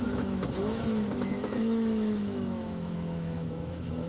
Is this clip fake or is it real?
fake